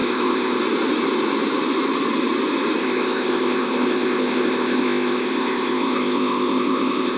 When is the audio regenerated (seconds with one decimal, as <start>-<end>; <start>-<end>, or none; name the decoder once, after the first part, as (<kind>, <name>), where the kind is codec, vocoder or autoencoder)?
0.0-0.6 (codec, ZipCodec); 2.8-7.2